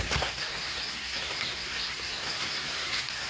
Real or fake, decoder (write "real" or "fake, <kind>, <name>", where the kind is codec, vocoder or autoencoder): fake, codec, SNAC